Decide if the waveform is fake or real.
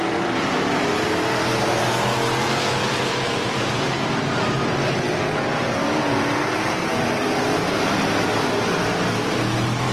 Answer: real